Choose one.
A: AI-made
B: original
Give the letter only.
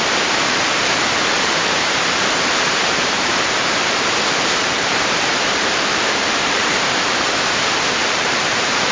A